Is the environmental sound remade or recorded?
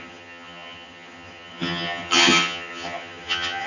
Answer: remade